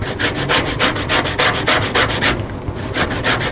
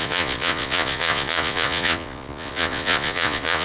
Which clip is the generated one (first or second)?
second